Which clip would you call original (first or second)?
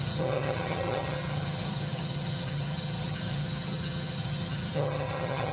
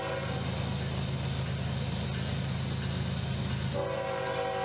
second